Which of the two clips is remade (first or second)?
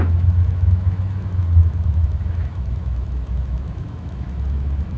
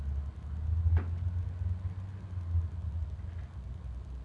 first